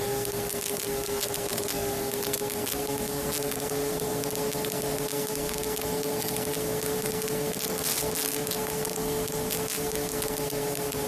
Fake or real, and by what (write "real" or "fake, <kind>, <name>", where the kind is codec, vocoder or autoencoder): fake, codec, SNAC